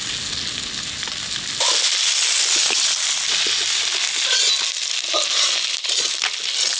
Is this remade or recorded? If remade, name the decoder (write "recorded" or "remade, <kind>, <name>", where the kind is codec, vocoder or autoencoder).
recorded